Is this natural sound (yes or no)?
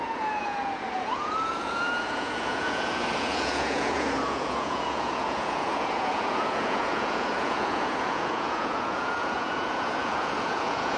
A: no